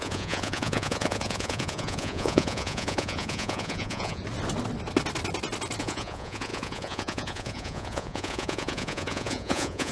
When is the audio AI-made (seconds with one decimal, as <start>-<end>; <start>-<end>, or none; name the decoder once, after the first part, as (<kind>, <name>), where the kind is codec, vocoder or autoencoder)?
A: 0.0-4.2 (vocoder, Vocos); 5.8-9.9